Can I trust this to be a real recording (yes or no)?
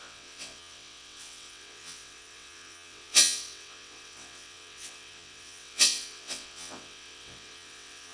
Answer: no